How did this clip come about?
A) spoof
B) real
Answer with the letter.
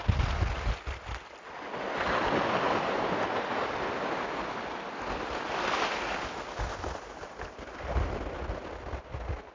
B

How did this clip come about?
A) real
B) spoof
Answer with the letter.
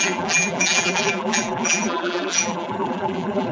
B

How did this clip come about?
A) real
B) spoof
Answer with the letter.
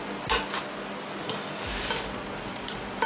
A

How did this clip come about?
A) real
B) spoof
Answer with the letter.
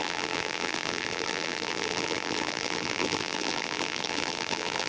B